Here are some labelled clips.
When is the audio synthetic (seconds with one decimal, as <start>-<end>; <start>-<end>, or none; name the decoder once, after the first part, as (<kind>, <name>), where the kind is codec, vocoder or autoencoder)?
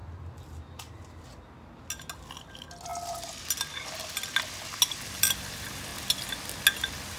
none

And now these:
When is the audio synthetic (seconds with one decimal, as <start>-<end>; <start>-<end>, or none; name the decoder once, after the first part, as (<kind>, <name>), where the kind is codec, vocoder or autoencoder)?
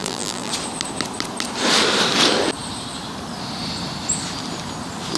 0.0-0.5 (vocoder, BigVGAN v2)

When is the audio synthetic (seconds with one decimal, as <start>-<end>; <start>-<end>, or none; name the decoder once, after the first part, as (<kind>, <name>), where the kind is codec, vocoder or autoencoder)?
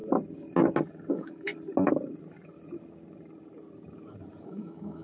1.1-1.5 (autoencoder, DAC-VAE); 4.4-5.0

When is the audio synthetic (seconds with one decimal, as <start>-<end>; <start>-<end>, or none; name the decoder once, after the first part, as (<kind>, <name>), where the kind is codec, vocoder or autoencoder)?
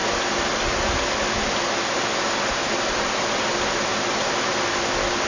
none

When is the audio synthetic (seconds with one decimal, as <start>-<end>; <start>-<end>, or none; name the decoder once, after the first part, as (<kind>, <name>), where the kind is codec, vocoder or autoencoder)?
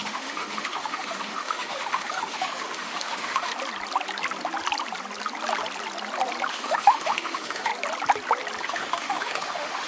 0.0-3.5 (autoencoder, DAC-VAE); 6.5-7.7; 8.6-9.9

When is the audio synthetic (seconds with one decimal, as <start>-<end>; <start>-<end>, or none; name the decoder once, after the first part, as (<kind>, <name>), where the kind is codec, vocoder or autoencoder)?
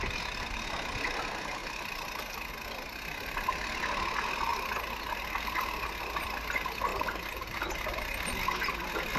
1.6-2.5 (vocoder, BigVGAN v2); 6.9-7.6